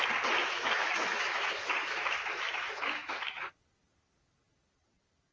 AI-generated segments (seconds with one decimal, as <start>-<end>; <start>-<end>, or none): 0.4-3.5